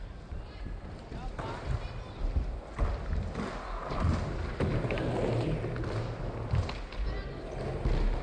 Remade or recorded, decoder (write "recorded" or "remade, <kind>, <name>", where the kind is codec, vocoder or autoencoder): recorded